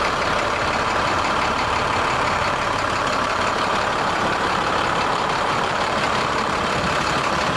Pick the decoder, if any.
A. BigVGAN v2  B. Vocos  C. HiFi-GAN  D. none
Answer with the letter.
A